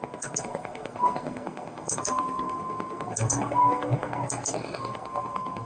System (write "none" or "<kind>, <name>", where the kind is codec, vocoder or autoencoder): codec, SNAC